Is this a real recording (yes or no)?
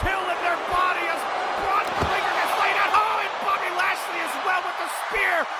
yes